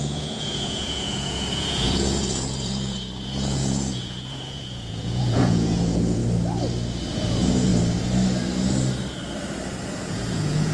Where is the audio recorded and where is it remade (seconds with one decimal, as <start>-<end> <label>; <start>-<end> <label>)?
0.0-6.2 remade; 6.2-7.1 recorded; 7.1-7.7 remade; 7.7-9.9 recorded; 9.9-10.7 remade